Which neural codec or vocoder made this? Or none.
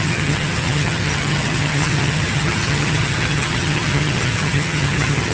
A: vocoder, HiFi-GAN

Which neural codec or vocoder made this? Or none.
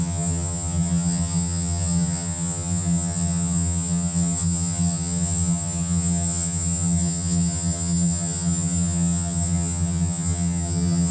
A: vocoder, HiFi-GAN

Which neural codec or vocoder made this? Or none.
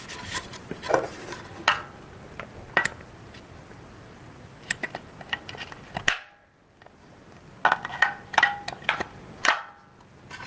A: none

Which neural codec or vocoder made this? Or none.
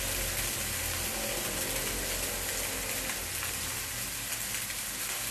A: none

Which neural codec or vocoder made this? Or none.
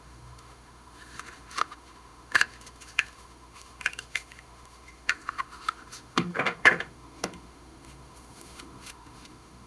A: autoencoder, DAC-VAE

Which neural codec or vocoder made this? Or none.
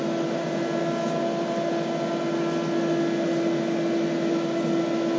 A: none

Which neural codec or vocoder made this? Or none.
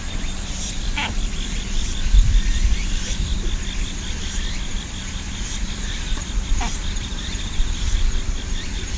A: vocoder, BigVGAN v2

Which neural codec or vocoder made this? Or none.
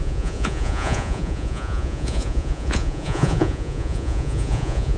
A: vocoder, Vocos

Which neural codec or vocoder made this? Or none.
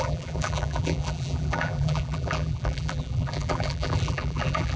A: vocoder, BigVGAN v2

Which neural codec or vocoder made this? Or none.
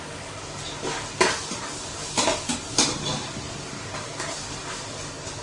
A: none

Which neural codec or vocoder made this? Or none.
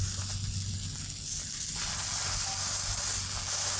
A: none